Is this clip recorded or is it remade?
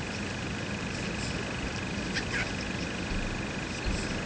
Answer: recorded